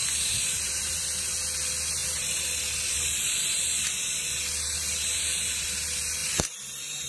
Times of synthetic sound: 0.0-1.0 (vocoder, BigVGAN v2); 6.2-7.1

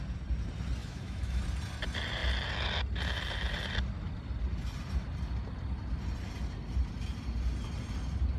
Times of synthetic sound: 0.8-1.4 (autoencoder, DAC-VAE)

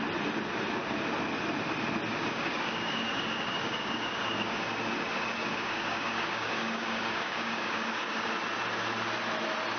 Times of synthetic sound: 2.1-4.6 (codec, DAC); 5.4-8.3

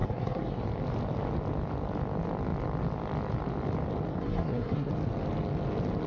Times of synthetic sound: 0.0-0.6 (codec, SNAC); 4.1-4.9